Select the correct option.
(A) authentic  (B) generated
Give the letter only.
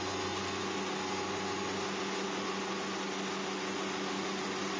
A